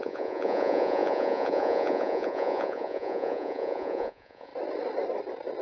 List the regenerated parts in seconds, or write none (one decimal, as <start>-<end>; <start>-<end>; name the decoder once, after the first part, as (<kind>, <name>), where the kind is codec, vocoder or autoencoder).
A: 0.0-4.5 (vocoder, Vocos)